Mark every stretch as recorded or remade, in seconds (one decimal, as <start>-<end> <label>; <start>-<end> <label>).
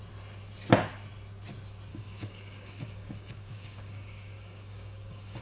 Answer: 0.0-1.9 recorded; 1.9-5.4 remade